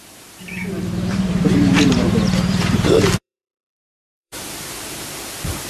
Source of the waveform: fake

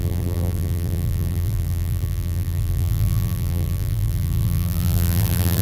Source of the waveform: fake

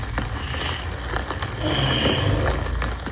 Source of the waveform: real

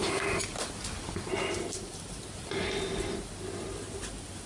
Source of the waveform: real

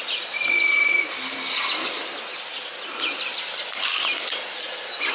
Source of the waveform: real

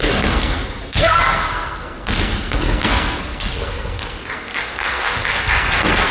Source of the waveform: fake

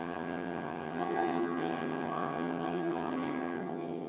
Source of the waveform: fake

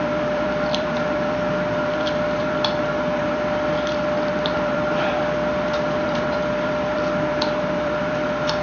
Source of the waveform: fake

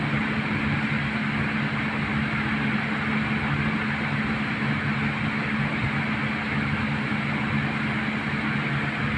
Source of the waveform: real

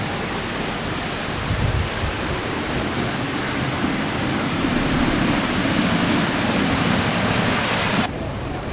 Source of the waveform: real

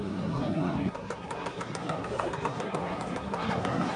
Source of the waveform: fake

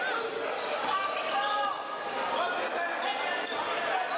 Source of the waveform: real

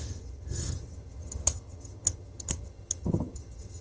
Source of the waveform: fake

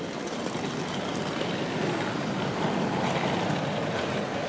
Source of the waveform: real